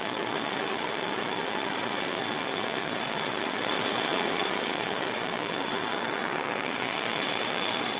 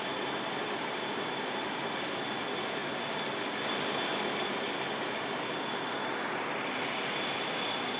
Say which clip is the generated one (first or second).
first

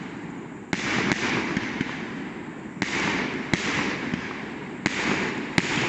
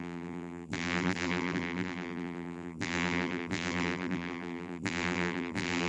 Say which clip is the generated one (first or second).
second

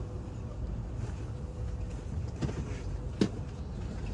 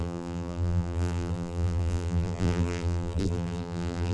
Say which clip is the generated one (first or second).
second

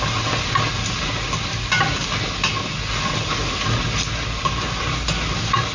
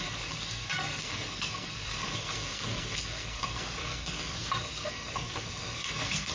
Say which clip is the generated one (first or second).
second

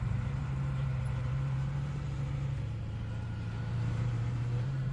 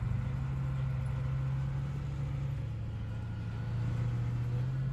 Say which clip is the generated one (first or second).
first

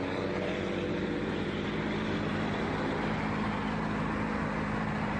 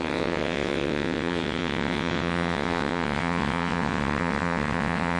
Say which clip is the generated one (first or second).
second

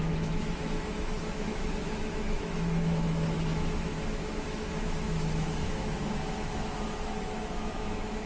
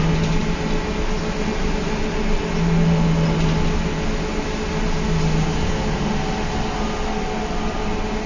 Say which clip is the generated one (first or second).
first